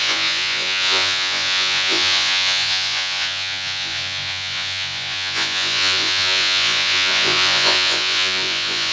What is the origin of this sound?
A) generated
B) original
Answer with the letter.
A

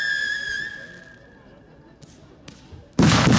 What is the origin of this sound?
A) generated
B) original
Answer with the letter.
B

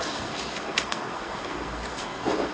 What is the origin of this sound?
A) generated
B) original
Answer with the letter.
A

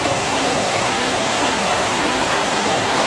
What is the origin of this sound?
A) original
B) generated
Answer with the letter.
B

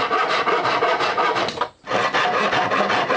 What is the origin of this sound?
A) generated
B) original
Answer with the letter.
B